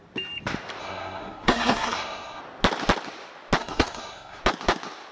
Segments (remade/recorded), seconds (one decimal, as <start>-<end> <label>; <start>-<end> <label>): 0.0-0.8 recorded; 0.8-2.4 remade; 2.4-3.6 recorded; 3.6-4.4 remade; 4.4-5.1 recorded